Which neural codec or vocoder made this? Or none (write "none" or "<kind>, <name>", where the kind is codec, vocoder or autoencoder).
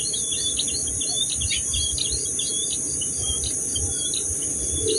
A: vocoder, BigVGAN v2